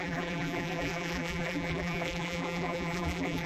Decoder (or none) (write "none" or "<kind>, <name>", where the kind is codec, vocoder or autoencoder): vocoder, BigVGAN v2